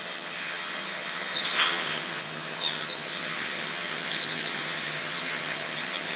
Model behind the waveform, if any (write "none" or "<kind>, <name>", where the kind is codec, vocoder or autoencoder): vocoder, HiFi-GAN